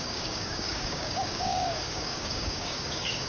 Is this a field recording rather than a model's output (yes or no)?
no